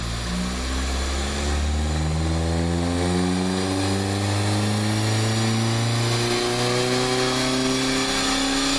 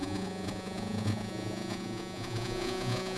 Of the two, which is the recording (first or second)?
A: first